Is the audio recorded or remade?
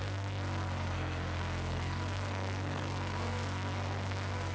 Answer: remade